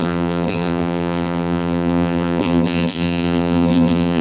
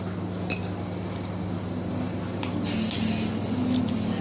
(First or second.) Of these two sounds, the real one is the second